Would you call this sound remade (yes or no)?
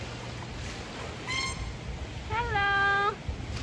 no